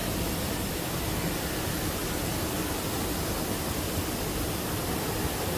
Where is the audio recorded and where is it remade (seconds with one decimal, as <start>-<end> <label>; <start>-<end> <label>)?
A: 0.0-5.6 recorded